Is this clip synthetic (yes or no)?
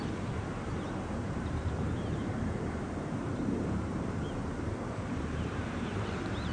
yes